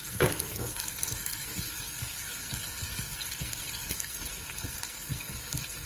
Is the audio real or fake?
fake